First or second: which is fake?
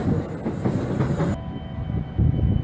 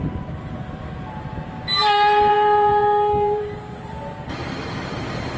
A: second